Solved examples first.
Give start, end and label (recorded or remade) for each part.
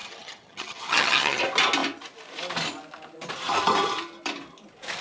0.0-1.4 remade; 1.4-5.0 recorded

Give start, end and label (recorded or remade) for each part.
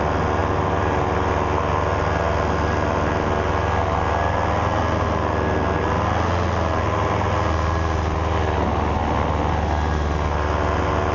0.0-11.1 recorded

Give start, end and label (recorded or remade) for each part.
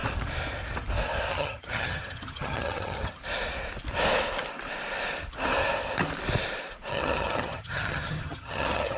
0.0-1.3 recorded; 1.3-3.2 remade; 3.2-6.9 recorded; 6.9-9.0 remade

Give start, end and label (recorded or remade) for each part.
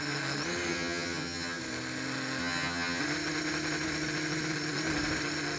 0.0-0.7 recorded; 0.7-1.6 remade; 1.6-2.4 recorded; 2.4-3.0 remade; 3.0-5.6 recorded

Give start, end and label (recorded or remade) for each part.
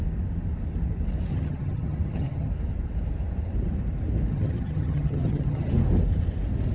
0.0-1.3 recorded; 1.3-2.5 remade; 2.5-4.3 recorded; 4.3-5.7 remade; 5.7-6.7 recorded